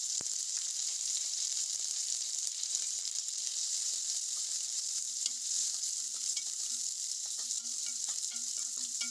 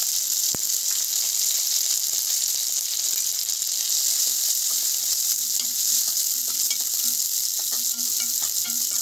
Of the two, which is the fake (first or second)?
first